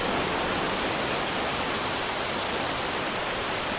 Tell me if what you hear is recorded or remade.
recorded